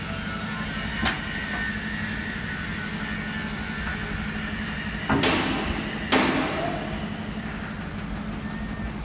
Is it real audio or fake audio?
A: real